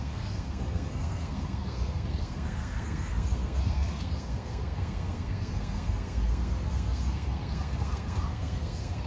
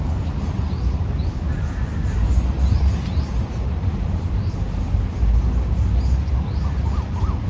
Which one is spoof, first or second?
first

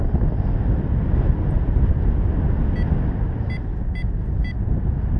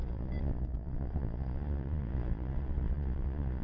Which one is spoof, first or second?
second